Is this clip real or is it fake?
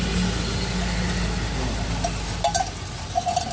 real